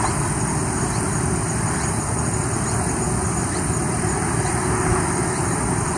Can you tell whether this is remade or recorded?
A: recorded